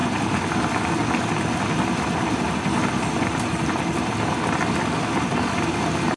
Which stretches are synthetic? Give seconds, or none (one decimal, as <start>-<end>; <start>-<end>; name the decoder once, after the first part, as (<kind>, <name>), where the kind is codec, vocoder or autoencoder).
none